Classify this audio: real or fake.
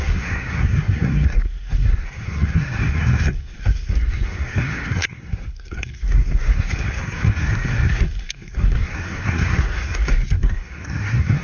fake